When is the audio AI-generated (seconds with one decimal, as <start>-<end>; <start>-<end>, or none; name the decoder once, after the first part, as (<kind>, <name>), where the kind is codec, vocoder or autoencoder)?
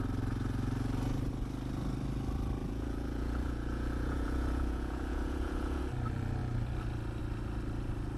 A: 2.6-5.8 (vocoder, Vocos)